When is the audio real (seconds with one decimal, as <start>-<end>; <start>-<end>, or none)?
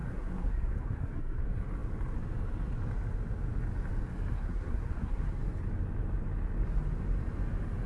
1.4-4.3; 5.4-7.9